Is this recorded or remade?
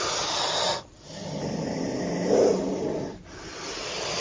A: recorded